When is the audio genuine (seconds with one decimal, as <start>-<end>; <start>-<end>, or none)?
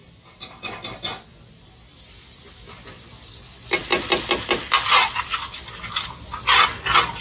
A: 0.7-7.2